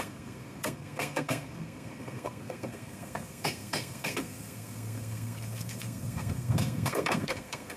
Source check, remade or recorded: remade